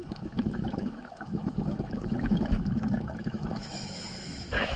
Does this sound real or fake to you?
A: fake